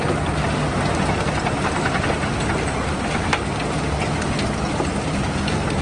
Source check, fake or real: real